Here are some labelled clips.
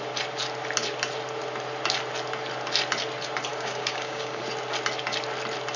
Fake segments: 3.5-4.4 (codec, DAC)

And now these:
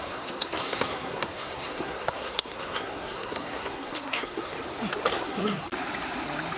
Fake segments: 0.0-4.5 (codec, SNAC); 5.1-5.7